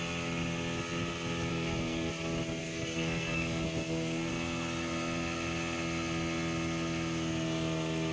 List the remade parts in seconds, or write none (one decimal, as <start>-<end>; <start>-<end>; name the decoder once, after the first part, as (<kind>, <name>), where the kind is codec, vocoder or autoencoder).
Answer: 1.5-2.1 (codec, SNAC); 2.6-4.3